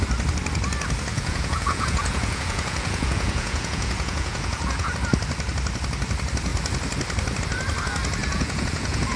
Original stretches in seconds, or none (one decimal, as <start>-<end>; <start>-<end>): 0.0-1.1; 4.9-8.2